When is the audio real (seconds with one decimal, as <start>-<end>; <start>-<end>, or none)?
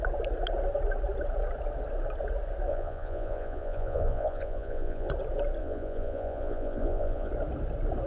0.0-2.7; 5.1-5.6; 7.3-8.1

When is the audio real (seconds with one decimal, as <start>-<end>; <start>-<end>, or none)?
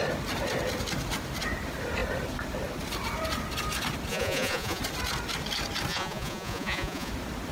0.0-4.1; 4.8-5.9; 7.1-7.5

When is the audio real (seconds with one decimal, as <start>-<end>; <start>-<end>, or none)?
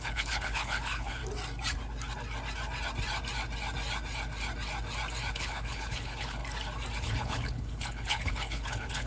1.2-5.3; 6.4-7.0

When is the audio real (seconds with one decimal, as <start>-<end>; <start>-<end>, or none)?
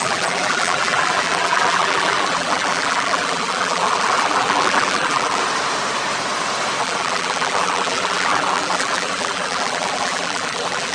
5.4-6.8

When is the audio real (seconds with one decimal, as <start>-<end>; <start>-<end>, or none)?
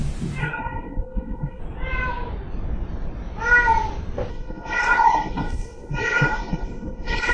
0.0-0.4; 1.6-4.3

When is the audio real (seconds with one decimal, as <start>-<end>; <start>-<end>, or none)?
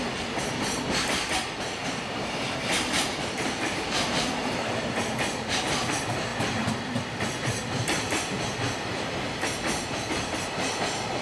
0.0-1.8; 5.0-11.2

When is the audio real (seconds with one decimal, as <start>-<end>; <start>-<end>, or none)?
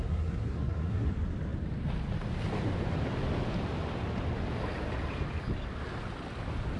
1.1-6.8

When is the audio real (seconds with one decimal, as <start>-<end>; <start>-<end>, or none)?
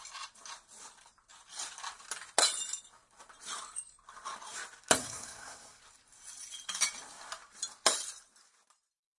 0.0-5.0; 5.8-9.2